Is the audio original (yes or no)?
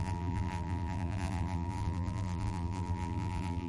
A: no